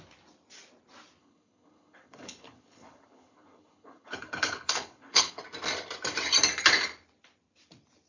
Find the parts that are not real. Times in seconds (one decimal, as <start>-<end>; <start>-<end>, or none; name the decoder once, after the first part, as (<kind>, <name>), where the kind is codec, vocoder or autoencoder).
1.2-5.4 (codec, HILCodec)